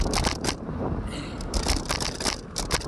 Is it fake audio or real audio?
real